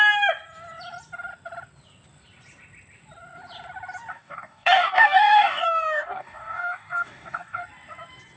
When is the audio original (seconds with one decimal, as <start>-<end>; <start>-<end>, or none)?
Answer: 0.0-4.1; 7.6-8.4